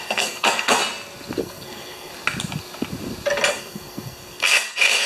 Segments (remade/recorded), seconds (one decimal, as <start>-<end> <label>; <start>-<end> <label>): 0.0-0.8 remade; 0.8-1.4 recorded; 1.4-2.1 remade; 2.1-3.5 recorded; 3.5-5.1 remade